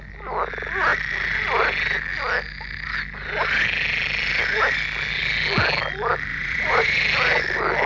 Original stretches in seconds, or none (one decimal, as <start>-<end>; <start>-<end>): 0.0-6.3; 7.0-7.9